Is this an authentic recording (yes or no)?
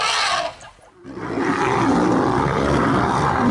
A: yes